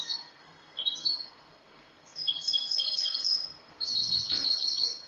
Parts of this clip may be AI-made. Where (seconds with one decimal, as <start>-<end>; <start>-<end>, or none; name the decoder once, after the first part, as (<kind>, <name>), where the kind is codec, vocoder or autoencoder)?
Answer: 0.0-5.1 (codec, SNAC)